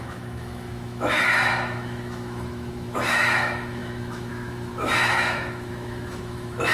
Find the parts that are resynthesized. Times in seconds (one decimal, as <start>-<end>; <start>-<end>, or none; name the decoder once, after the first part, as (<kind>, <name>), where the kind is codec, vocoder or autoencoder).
0.0-6.7 (autoencoder, DAC-VAE)